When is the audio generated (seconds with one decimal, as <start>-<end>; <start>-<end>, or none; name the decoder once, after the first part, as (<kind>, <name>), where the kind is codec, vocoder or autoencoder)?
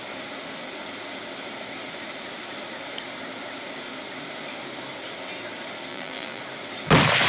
5.9-6.4 (vocoder, BigVGAN v2)